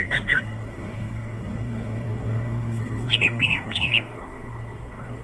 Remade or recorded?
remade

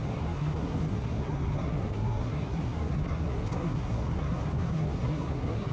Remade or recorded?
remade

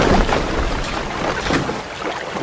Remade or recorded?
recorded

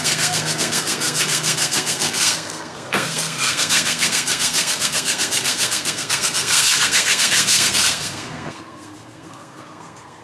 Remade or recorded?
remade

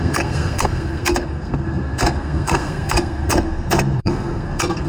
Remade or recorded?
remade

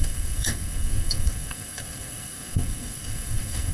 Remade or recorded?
remade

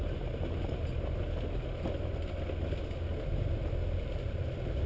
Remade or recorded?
recorded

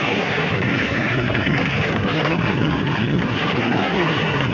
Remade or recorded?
remade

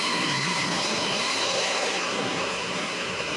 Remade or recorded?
remade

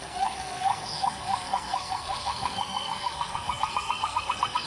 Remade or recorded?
remade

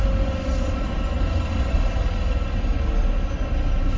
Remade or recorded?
recorded